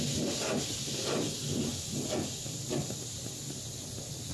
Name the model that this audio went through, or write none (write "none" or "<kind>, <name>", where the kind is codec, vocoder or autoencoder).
none